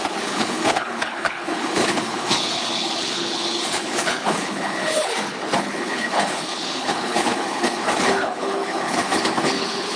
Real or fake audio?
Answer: fake